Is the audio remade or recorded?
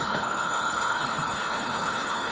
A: remade